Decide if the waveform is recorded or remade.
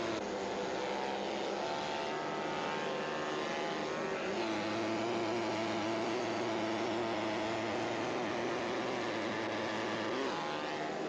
recorded